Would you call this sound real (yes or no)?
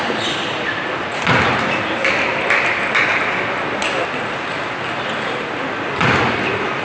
yes